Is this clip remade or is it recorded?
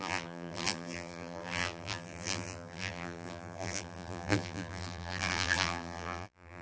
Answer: remade